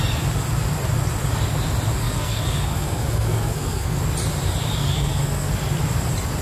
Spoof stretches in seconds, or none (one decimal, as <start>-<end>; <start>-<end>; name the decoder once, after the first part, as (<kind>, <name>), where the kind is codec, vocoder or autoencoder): 2.0-4.0 (codec, SNAC); 4.8-5.5